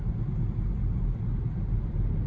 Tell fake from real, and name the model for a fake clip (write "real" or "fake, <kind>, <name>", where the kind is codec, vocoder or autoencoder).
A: real